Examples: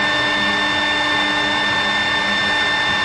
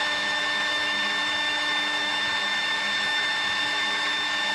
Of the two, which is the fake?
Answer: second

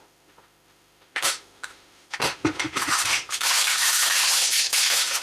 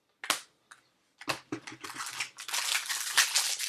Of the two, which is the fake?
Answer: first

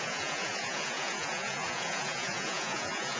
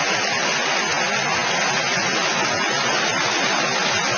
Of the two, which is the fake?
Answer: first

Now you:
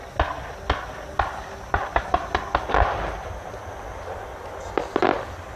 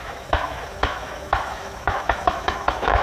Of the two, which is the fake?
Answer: second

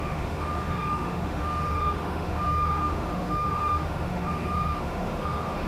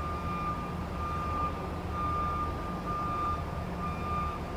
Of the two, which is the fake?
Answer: first